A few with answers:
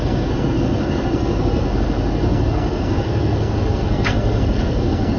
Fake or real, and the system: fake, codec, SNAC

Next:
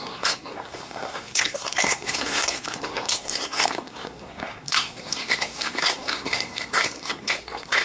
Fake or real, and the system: fake, codec, SNAC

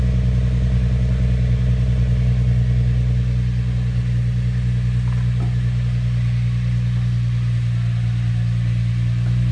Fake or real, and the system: real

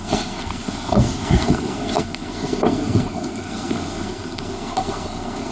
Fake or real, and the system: fake, codec, SNAC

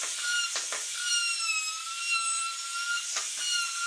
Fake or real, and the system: real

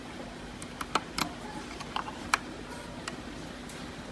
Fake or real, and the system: real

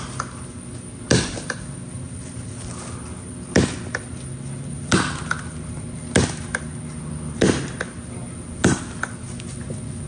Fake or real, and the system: real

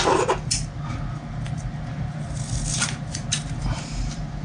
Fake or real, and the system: real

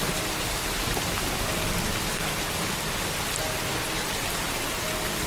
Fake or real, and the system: real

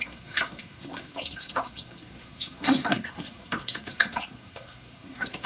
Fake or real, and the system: fake, codec, SNAC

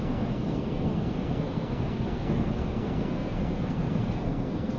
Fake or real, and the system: fake, codec, SNAC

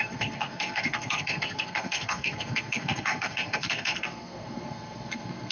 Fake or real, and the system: fake, codec, SNAC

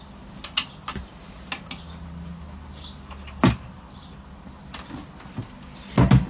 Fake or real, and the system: real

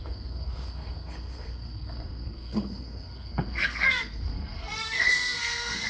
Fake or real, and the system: fake, codec, SNAC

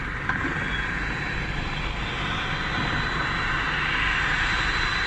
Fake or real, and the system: real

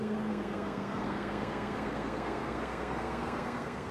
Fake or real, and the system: fake, codec, SNAC